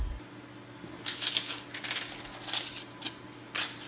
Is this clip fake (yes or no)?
no